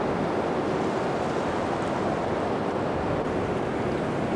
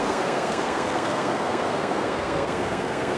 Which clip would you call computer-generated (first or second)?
second